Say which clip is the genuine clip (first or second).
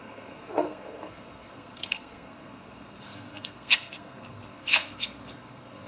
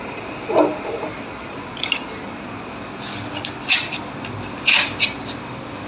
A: second